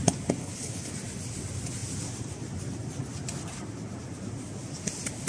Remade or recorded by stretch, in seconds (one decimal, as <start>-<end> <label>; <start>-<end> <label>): 0.0-0.4 recorded; 0.4-0.9 remade; 0.9-5.3 recorded